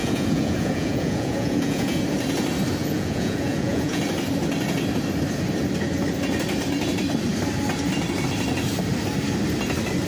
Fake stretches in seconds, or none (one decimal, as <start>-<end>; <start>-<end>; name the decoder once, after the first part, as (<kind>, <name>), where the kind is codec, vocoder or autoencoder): 0.0-2.0 (vocoder, Vocos); 2.8-4.0